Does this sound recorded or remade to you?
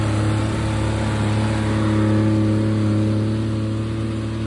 recorded